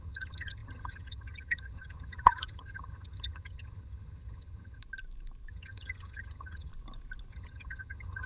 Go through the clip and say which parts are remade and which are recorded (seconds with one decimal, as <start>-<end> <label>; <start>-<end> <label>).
0.0-4.8 remade; 4.8-5.5 recorded; 5.5-6.7 remade; 6.7-7.3 recorded; 7.3-8.3 remade